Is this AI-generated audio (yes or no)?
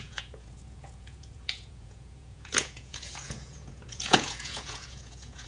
yes